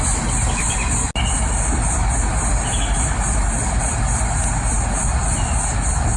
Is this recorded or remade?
recorded